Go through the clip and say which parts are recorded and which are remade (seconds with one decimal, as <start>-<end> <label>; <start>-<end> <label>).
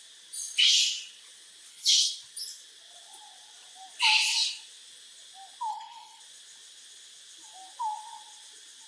0.0-1.7 recorded; 1.7-2.2 remade; 2.2-5.7 recorded; 5.7-6.2 remade; 6.2-8.9 recorded